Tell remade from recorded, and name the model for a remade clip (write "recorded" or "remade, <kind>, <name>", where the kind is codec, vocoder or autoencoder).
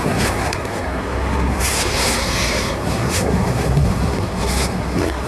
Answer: remade, codec, SNAC